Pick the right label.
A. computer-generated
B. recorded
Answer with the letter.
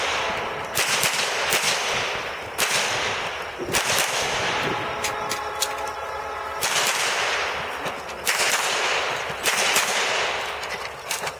B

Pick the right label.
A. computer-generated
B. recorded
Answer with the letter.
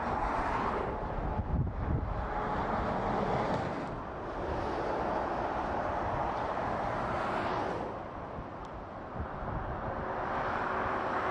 B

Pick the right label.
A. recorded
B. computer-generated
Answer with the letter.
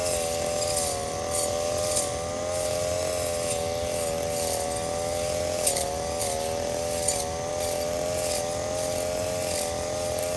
A